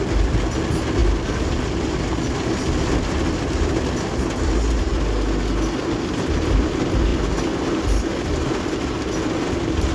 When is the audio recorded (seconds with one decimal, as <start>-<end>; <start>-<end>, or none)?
0.0-9.9